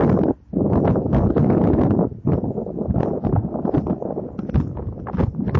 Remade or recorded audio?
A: recorded